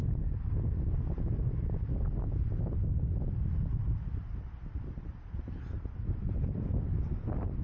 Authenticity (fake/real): real